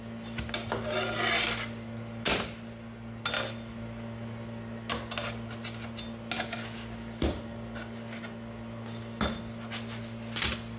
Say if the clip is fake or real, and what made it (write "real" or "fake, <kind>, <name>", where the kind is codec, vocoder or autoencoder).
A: real